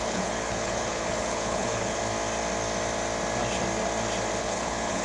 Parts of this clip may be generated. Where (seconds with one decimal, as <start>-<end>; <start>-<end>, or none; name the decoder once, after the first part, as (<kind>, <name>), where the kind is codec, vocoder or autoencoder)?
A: 0.0-2.0 (codec, HILCodec); 4.4-5.0